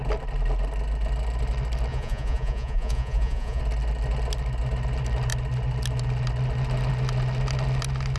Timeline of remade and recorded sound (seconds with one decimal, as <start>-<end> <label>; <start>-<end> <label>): 0.0-1.9 recorded; 1.9-3.6 remade; 3.6-8.2 recorded